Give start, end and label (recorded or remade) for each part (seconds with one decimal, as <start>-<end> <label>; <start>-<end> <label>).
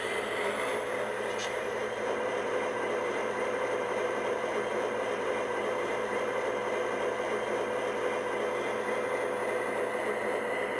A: 0.0-6.6 remade; 6.6-10.1 recorded; 10.1-10.8 remade